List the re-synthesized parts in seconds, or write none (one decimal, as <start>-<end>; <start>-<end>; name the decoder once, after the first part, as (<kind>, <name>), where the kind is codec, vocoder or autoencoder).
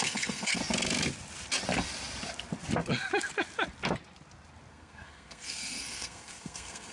0.0-0.6 (codec, SNAC); 4.7-6.9